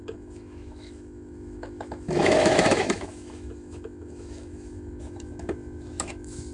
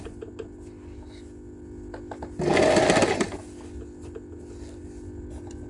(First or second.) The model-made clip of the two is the first